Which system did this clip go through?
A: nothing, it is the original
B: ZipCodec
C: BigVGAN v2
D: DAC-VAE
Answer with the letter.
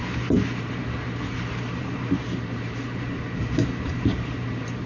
C